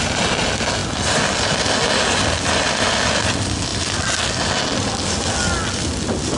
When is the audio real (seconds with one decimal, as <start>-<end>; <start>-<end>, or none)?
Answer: 0.0-6.4